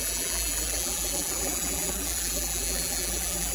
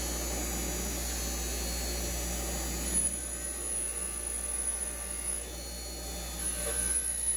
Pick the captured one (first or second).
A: second